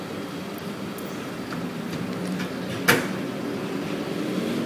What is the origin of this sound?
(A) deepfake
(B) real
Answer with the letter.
B